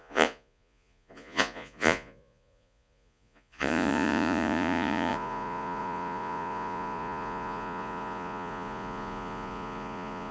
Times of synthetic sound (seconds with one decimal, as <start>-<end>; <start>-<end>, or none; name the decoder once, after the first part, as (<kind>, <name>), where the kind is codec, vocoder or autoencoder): 0.0-10.3 (vocoder, Vocos)